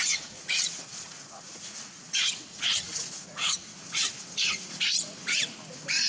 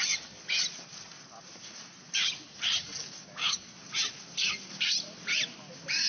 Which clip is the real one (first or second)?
second